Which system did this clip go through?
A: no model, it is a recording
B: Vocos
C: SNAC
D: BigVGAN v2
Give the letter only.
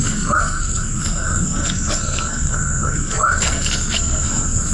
C